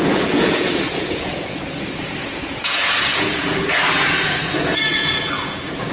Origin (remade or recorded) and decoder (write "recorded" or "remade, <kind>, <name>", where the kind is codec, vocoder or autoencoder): remade, vocoder, Vocos